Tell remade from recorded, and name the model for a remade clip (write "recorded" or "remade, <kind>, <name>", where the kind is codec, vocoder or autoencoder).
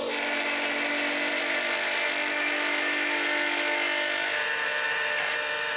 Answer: recorded